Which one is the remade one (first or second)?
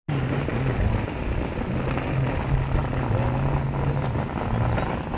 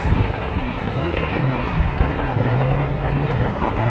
second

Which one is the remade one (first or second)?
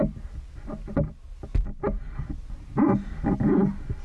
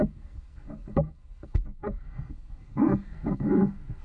second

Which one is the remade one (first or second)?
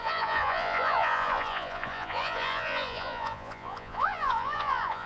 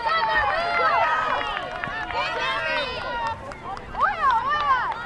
first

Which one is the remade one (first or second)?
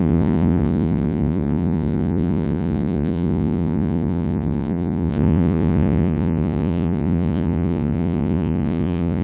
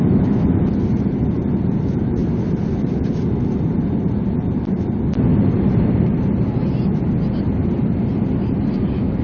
first